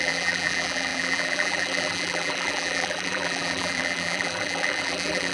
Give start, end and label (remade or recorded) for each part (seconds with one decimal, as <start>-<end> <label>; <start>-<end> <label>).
0.0-5.3 remade